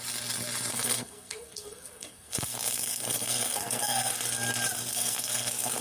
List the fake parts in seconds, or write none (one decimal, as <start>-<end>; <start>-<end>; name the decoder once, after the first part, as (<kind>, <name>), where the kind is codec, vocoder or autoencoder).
0.7-4.1 (codec, SNAC); 4.9-5.8